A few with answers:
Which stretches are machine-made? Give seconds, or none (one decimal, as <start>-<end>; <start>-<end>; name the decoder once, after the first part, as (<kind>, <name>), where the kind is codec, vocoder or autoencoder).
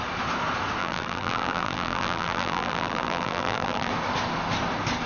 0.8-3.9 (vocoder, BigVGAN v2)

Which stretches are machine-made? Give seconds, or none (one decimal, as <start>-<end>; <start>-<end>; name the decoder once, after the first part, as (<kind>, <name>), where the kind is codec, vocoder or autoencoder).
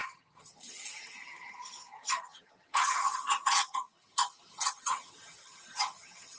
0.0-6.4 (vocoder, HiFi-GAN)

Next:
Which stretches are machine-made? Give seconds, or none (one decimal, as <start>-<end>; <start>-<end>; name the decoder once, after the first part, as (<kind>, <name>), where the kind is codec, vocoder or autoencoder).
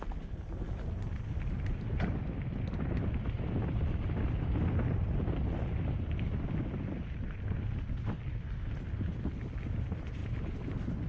none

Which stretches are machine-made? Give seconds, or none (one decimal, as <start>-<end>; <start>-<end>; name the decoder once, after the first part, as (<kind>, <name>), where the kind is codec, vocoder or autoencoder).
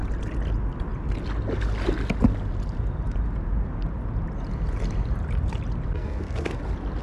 5.9-6.6 (codec, SNAC)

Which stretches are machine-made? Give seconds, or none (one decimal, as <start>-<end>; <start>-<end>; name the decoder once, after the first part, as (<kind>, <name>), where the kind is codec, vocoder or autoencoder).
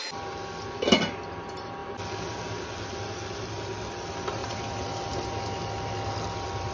none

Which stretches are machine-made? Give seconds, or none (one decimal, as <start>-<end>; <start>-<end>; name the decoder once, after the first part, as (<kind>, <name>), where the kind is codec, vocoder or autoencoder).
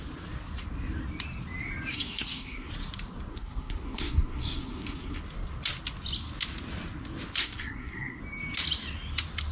1.9-2.7 (codec, SNAC); 3.3-5.2; 7.4-8.2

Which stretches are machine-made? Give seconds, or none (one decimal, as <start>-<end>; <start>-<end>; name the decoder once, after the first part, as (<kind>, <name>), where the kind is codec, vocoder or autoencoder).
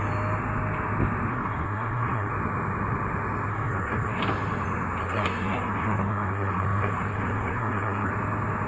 1.3-2.3 (codec, SNAC); 3.5-4.2; 5.0-8.1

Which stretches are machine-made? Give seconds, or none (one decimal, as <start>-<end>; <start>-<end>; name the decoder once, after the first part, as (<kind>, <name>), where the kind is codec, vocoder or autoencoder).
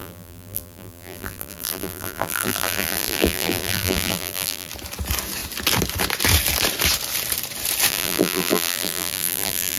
0.0-4.7 (vocoder, BigVGAN v2); 7.9-9.8